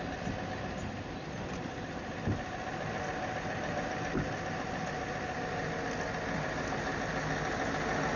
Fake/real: real